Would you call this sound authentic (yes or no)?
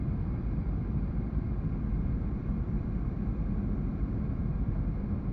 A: no